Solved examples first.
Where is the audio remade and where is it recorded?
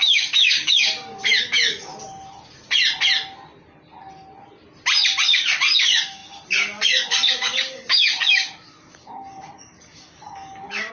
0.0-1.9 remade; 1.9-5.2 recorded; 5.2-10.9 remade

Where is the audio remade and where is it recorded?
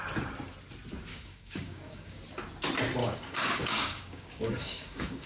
0.0-1.1 recorded; 1.1-2.2 remade; 2.2-3.0 recorded; 3.0-5.3 remade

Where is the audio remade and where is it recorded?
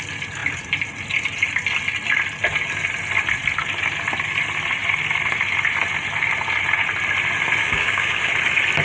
0.0-7.6 recorded; 7.6-8.3 remade; 8.3-8.8 recorded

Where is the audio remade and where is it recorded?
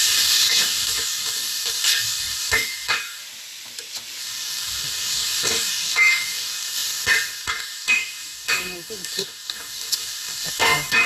0.0-3.2 remade; 3.2-4.2 recorded; 4.2-11.1 remade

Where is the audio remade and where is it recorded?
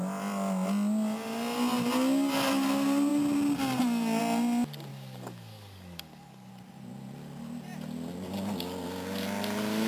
0.0-4.9 recorded; 4.9-6.5 remade; 6.5-9.9 recorded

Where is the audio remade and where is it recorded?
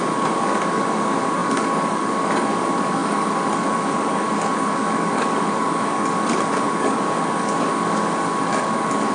0.0-9.1 remade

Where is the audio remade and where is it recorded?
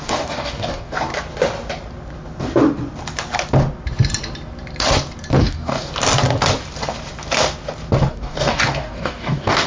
0.0-1.1 remade; 1.1-5.4 recorded; 5.4-5.9 remade; 5.9-8.1 recorded; 8.1-9.7 remade